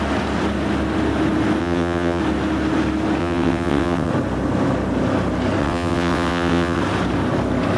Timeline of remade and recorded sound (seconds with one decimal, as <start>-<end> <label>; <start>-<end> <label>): 0.0-1.6 recorded; 1.6-2.2 remade; 2.2-3.2 recorded; 3.2-4.1 remade; 4.1-5.6 recorded; 5.6-6.8 remade; 6.8-7.8 recorded